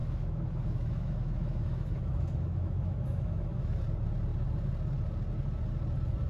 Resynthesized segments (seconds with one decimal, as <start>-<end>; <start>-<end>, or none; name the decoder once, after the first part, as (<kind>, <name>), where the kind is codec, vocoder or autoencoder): 0.0-3.8 (autoencoder, DAC-VAE)